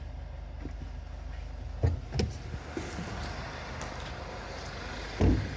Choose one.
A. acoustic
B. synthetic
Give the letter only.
A